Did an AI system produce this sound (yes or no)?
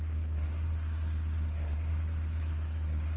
yes